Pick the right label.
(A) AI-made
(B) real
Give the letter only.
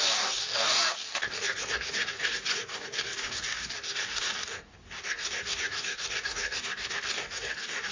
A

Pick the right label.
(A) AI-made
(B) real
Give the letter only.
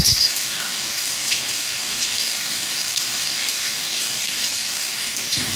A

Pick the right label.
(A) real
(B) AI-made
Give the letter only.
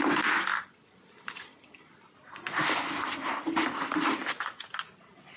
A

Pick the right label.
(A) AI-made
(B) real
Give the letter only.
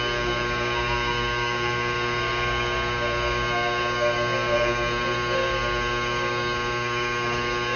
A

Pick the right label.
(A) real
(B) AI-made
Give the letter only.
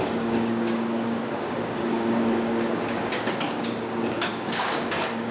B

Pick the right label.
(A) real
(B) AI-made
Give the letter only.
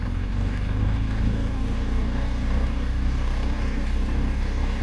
B